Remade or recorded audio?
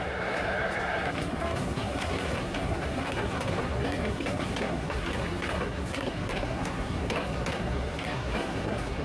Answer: remade